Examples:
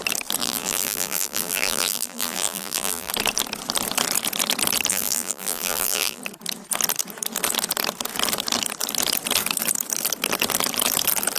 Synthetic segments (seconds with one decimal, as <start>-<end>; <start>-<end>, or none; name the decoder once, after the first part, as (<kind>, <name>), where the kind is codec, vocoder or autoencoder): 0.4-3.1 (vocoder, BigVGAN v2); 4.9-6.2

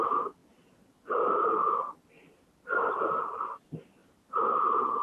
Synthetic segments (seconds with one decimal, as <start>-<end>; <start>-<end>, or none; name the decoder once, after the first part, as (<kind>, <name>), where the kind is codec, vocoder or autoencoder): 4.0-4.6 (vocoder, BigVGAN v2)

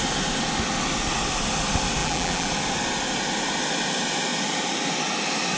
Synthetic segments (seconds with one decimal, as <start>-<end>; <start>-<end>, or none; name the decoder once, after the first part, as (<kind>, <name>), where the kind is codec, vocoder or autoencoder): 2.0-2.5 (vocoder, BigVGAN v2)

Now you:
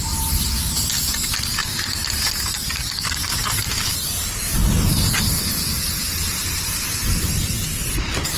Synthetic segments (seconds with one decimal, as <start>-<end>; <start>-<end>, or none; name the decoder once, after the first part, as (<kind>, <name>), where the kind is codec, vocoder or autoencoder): 1.6-4.2 (vocoder, BigVGAN v2); 6.1-7.8

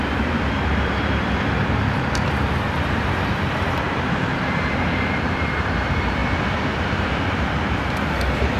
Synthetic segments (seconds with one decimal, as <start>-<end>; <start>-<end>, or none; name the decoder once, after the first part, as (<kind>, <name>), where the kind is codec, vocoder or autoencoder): 0.0-6.2 (vocoder, BigVGAN v2); 7.0-8.6

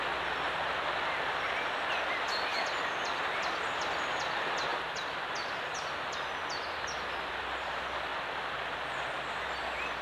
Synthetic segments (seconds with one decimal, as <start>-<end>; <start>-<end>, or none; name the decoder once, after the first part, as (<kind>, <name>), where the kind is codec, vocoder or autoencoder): none

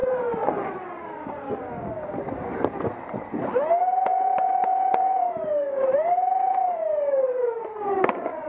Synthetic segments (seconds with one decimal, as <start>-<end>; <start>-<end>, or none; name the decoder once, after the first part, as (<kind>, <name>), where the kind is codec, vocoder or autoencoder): none

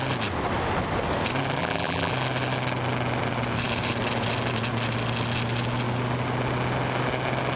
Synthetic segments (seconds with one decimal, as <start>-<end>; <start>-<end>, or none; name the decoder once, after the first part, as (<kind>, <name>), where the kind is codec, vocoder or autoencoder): 1.6-2.1 (vocoder, BigVGAN v2)